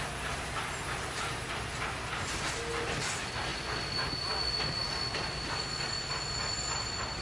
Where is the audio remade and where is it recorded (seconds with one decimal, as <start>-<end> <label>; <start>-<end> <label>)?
0.0-7.2 recorded